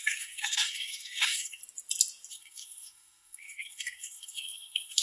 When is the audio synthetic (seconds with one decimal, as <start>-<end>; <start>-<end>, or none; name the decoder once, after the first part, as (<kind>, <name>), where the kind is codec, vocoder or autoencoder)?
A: 0.0-1.6 (codec, SNAC); 2.3-5.0